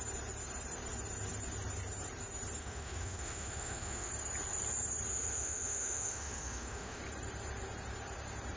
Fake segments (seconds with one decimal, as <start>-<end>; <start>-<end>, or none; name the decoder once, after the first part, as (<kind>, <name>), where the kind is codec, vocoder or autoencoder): 2.6-4.1 (autoencoder, DAC-VAE); 5.1-7.0